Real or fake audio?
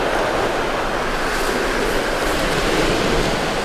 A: real